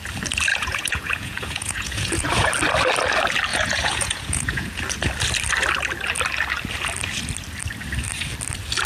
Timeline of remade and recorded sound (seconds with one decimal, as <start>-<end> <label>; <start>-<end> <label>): 0.0-0.5 recorded; 0.5-2.5 remade; 2.5-3.5 recorded; 3.5-4.8 remade; 4.8-8.9 recorded